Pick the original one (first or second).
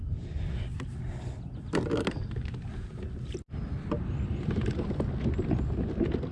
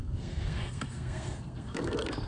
first